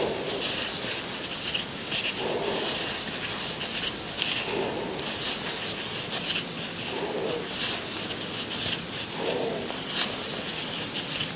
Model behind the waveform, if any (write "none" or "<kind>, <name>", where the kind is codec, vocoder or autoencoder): none